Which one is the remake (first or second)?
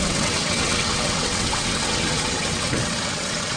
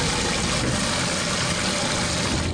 first